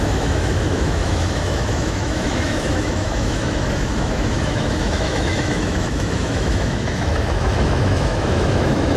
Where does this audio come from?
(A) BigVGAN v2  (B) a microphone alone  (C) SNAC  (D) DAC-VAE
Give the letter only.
D